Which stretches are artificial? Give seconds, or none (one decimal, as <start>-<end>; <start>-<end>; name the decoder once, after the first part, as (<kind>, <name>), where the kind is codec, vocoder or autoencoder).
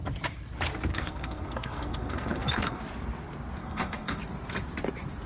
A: 0.9-2.8 (codec, SNAC); 3.6-4.2